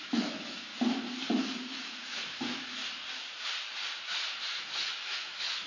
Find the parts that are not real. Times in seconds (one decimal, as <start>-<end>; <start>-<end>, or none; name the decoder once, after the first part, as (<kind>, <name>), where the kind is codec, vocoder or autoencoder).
0.0-0.7 (autoencoder, DAC-VAE); 1.3-2.8; 4.5-5.7

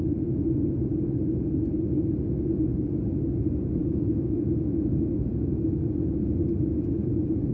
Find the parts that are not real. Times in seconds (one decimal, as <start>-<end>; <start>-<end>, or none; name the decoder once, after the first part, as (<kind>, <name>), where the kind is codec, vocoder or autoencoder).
3.8-5.9 (autoencoder, DAC-VAE)

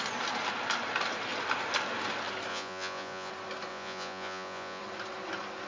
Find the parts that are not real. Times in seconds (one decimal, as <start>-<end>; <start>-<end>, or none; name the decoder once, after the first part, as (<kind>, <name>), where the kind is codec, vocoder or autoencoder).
2.5-3.3 (vocoder, Vocos); 3.7-4.8